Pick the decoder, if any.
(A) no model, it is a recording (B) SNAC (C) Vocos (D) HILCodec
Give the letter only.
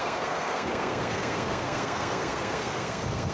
B